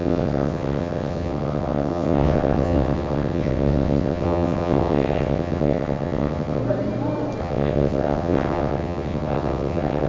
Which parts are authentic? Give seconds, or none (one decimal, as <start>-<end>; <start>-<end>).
6.6-7.4